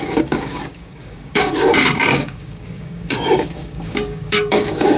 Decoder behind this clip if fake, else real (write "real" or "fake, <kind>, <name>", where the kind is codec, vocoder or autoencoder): fake, codec, DAC